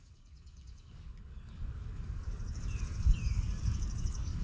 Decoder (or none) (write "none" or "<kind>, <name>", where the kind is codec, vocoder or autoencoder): codec, DAC